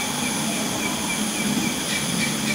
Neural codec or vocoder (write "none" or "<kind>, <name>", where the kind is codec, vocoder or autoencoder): none